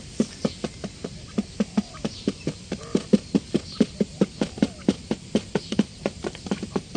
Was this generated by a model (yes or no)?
no